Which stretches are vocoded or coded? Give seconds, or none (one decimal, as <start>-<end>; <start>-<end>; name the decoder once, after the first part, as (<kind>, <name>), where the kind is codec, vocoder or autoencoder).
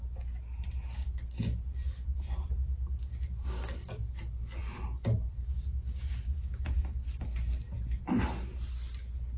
none